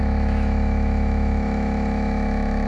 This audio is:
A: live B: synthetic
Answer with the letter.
B